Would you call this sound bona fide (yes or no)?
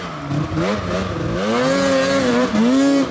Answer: yes